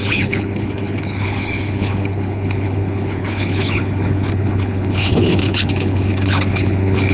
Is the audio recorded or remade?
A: remade